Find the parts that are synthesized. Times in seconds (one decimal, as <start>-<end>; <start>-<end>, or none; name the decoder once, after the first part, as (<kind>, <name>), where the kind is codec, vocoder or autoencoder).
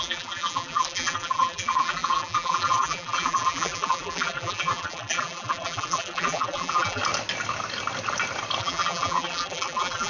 0.0-7.0 (vocoder, BigVGAN v2); 8.6-10.1